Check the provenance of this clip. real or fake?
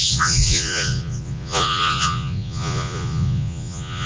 fake